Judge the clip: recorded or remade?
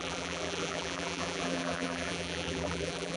remade